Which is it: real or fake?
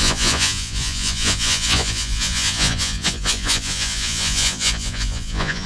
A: fake